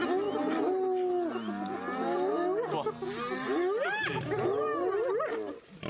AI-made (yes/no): no